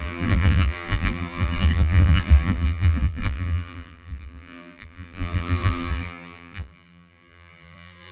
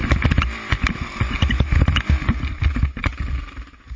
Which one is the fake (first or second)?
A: first